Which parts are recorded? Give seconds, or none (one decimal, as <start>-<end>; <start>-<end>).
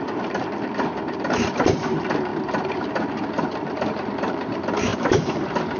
none